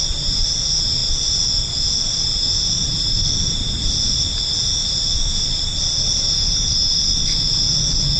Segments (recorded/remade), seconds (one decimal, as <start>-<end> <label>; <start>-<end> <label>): 0.0-8.2 remade